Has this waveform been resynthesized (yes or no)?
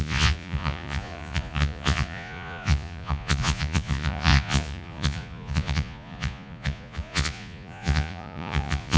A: yes